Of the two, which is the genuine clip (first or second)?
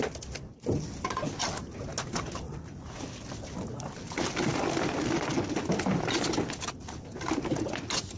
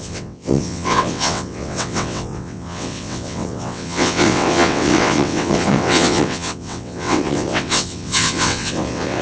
first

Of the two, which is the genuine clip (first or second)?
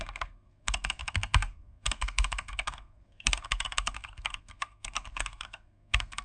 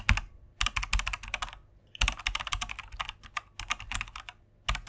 second